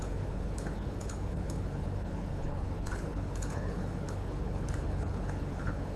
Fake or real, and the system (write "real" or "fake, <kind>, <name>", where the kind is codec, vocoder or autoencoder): fake, codec, HILCodec